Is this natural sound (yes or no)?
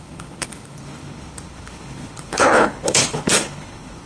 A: no